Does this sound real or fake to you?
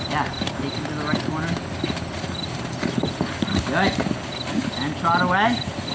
real